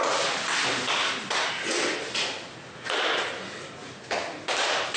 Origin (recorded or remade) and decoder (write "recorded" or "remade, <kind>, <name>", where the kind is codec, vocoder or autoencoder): recorded